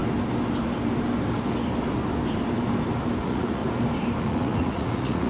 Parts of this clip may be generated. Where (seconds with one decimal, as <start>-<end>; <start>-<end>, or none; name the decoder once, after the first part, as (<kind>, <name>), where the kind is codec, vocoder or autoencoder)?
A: 3.2-3.6 (vocoder, Vocos); 4.2-5.3